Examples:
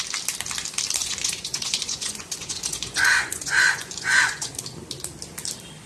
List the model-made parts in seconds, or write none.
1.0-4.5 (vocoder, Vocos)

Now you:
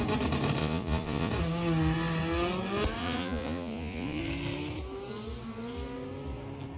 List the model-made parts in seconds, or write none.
0.6-1.3 (vocoder, Vocos); 3.0-4.2